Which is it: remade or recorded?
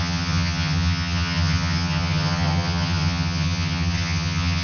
remade